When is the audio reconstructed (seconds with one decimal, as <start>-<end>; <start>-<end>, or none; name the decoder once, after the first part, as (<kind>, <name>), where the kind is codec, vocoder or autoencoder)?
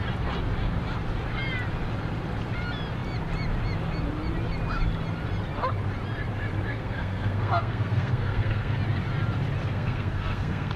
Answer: 6.7-8.8 (codec, SNAC); 9.6-10.8